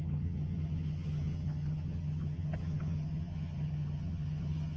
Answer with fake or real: fake